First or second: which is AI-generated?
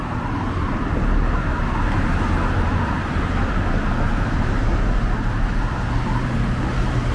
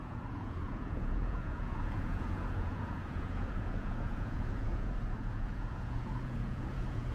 second